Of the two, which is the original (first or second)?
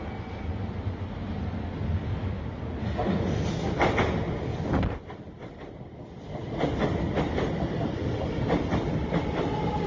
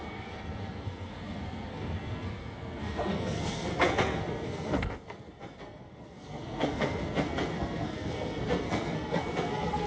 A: first